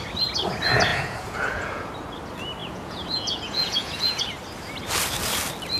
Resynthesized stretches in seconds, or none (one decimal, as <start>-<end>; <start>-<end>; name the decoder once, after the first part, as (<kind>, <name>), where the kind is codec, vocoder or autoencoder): 0.9-1.9 (vocoder, Vocos); 2.6-4.2